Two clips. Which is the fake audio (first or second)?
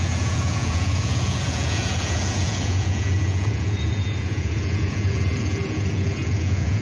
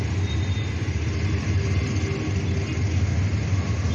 first